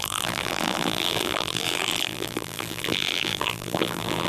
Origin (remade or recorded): remade